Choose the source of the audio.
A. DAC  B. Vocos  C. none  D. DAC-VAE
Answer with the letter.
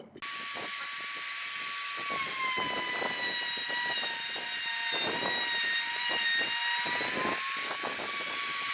C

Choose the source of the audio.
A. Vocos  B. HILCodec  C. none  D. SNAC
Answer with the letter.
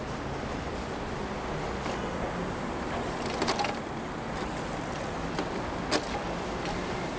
C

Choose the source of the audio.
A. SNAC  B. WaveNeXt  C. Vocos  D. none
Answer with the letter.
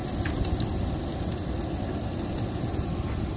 D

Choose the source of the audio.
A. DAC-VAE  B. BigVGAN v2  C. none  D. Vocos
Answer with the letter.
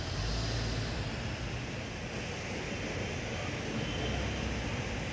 C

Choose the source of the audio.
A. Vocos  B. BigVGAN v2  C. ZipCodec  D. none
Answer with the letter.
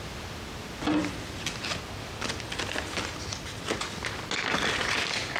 D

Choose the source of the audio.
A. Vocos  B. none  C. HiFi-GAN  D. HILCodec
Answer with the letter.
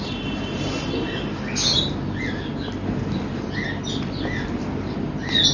B